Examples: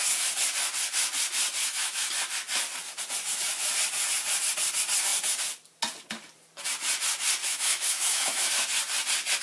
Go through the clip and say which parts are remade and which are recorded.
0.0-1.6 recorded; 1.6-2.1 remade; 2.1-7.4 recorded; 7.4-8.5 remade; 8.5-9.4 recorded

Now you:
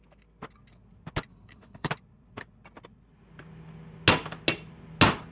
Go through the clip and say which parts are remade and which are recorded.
0.0-1.3 recorded; 1.3-1.9 remade; 1.9-5.3 recorded

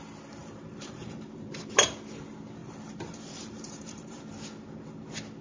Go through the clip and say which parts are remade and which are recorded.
0.0-0.4 recorded; 0.4-1.9 remade; 1.9-2.6 recorded; 2.6-4.2 remade; 4.2-5.4 recorded

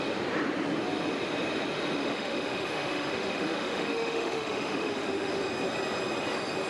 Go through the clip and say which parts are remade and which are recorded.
0.0-2.0 recorded; 2.0-5.4 remade; 5.4-6.7 recorded

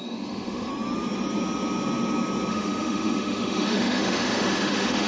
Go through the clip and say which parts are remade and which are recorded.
0.0-0.7 remade; 0.7-2.5 recorded; 2.5-5.1 remade

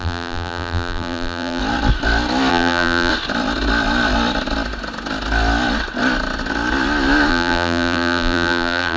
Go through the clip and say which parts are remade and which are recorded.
0.0-1.6 remade; 1.6-2.5 recorded; 2.5-3.1 remade; 3.1-7.3 recorded; 7.3-9.0 remade

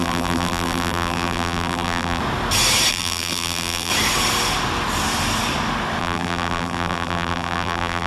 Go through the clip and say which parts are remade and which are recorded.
0.0-2.2 remade; 2.2-2.9 recorded; 2.9-3.9 remade; 3.9-6.0 recorded; 6.0-8.1 remade